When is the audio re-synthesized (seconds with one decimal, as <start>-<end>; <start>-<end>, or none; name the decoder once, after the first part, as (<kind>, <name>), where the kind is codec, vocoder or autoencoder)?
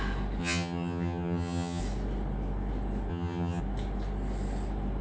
0.4-1.8 (vocoder, HiFi-GAN); 3.1-3.6